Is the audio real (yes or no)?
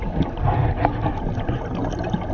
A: yes